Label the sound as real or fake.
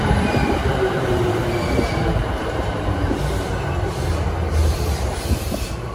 fake